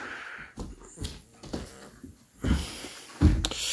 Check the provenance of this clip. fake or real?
real